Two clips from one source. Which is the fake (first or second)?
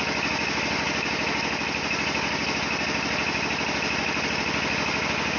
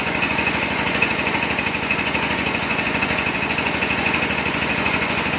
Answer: second